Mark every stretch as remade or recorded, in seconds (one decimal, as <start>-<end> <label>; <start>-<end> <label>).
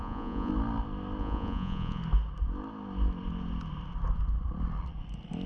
0.0-0.5 remade; 0.5-1.2 recorded; 1.2-2.0 remade; 2.0-5.5 recorded